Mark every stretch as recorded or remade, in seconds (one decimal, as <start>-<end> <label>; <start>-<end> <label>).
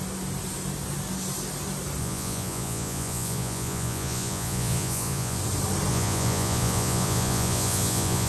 0.0-2.0 recorded; 2.0-5.4 remade; 5.4-5.9 recorded; 5.9-8.3 remade